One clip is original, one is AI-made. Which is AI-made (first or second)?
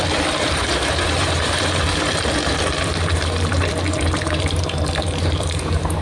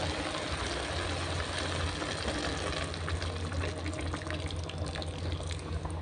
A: first